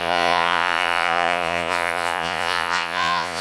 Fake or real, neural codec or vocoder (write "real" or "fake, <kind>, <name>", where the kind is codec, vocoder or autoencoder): fake, vocoder, Vocos